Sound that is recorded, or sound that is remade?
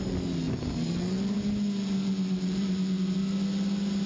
recorded